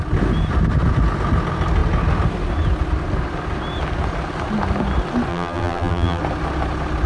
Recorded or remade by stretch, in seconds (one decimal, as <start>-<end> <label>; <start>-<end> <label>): 0.0-5.3 recorded; 5.3-6.2 remade; 6.2-7.1 recorded